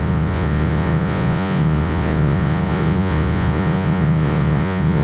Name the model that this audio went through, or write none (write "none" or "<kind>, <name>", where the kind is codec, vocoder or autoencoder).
vocoder, Vocos